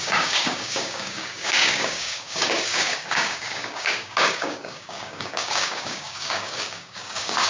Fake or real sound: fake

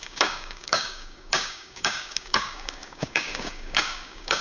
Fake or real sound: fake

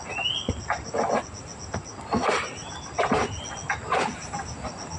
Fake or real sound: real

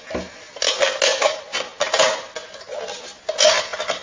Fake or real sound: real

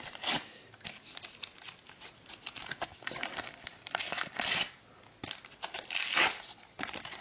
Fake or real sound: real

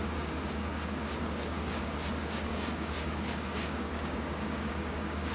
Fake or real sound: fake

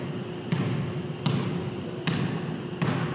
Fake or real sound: real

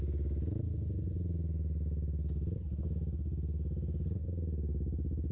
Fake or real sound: real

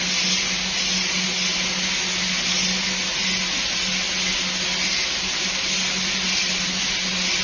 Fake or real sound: real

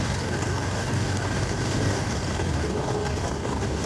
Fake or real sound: fake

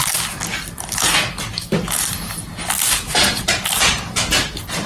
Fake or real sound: real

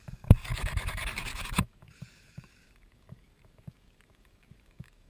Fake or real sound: fake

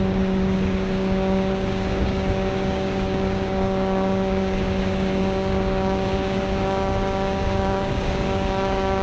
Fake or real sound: fake